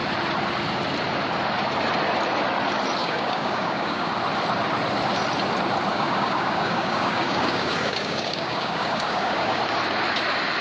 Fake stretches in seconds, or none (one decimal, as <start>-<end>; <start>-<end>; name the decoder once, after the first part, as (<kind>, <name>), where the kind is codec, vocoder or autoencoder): 3.0-4.1 (codec, DAC); 5.9-9.6